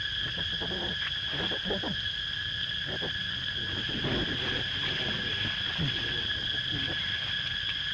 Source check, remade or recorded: recorded